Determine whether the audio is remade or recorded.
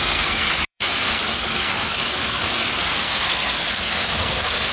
remade